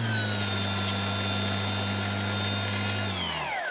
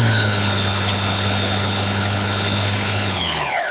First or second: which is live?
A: first